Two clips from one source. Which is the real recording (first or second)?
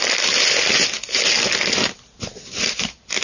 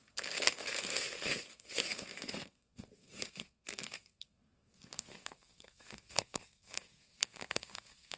first